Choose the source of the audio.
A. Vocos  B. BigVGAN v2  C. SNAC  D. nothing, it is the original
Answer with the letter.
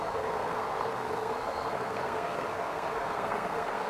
C